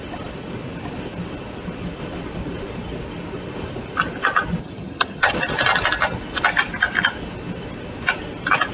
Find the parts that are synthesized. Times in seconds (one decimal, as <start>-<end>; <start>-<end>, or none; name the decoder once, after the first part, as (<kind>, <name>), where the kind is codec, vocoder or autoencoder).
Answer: 4.6-5.3 (vocoder, HiFi-GAN)